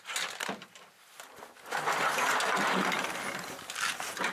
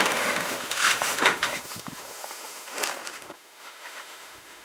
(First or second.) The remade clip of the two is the second